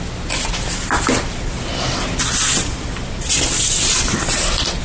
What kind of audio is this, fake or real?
real